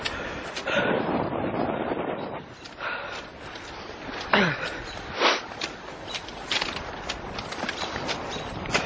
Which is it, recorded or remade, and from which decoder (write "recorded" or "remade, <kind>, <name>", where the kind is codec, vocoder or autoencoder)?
recorded